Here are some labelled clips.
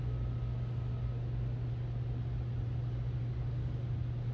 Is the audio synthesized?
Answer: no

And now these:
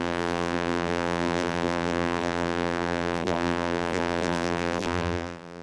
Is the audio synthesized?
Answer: yes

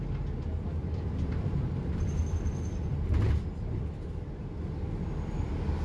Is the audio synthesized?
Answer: no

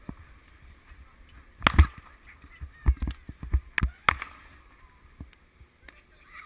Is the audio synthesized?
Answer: no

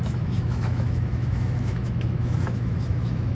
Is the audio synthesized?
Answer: yes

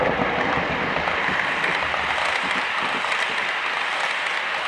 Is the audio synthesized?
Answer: yes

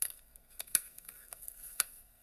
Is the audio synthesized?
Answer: yes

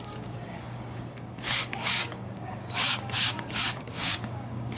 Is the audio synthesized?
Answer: yes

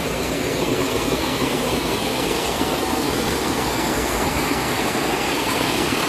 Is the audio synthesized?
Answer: yes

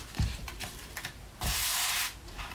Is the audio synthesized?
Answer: yes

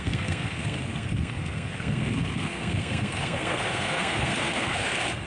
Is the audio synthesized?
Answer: yes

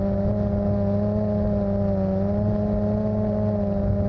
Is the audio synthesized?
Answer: no